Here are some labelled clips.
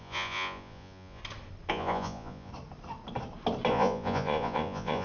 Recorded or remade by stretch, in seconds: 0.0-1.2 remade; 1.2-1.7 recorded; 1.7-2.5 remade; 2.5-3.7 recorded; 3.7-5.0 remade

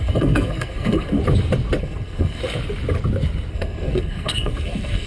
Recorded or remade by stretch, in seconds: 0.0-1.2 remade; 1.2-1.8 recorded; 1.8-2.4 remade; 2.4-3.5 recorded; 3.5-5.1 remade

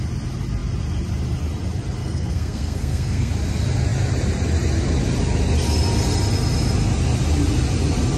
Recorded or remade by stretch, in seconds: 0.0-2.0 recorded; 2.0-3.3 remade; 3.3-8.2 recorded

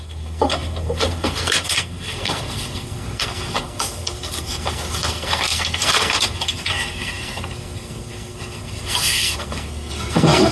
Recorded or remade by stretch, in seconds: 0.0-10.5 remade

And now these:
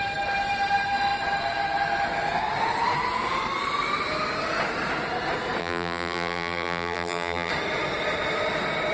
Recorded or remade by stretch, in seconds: 0.0-5.6 recorded; 5.6-7.5 remade; 7.5-8.9 recorded

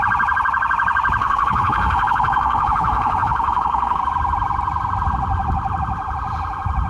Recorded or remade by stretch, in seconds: 0.0-1.2 recorded; 1.2-4.0 remade; 4.0-6.9 recorded